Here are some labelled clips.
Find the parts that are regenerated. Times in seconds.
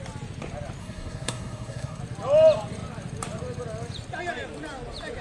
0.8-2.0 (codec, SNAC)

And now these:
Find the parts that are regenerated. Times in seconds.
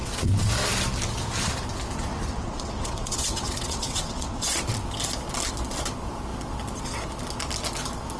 0.0-0.5 (vocoder, WaveNeXt); 2.1-4.6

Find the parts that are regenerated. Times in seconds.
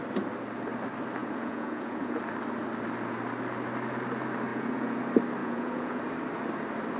1.2-2.2 (vocoder, Vocos); 4.5-5.0; 5.4-6.0